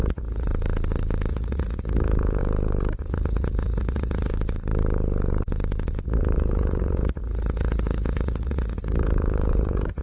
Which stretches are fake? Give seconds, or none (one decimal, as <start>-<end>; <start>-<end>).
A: 0.0-0.5; 1.3-2.4; 3.0-4.3; 6.0-10.0

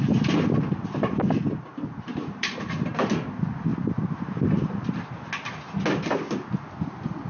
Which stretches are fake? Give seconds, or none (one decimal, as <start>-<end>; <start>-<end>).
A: 1.7-3.1; 3.7-5.0